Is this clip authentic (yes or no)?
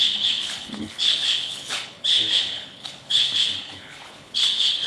no